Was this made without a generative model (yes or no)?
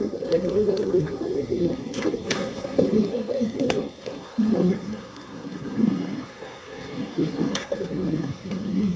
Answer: no